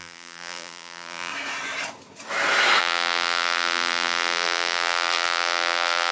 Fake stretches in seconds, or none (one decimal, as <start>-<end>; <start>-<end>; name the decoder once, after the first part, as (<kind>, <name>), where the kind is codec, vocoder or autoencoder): 0.0-1.3 (vocoder, BigVGAN v2); 2.8-6.1